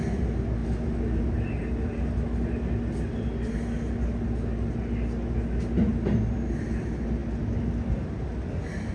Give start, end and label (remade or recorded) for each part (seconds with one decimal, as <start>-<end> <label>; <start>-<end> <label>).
0.0-8.9 recorded